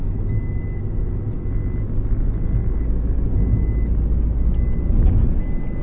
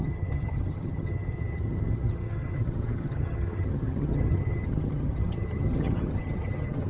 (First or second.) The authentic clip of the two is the first